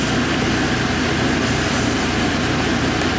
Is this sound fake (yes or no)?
no